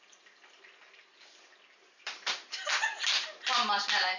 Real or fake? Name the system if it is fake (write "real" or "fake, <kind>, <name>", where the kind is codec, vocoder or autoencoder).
real